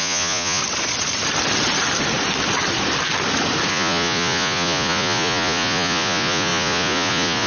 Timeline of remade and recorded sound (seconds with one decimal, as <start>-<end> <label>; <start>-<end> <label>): 0.0-0.6 remade; 0.6-3.7 recorded; 3.7-7.5 remade